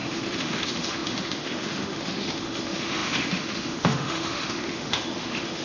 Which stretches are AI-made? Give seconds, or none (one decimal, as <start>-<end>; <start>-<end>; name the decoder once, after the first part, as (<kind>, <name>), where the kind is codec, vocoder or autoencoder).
0.0-5.6 (autoencoder, DAC-VAE)

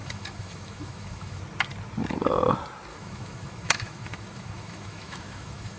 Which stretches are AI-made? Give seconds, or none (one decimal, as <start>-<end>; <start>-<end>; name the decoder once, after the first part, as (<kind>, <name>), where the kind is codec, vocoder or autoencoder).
0.0-1.4 (autoencoder, DAC-VAE); 2.9-5.8

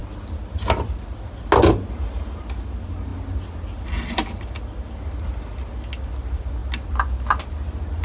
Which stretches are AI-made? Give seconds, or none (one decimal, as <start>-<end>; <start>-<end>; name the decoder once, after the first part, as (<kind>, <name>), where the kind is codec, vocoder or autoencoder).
none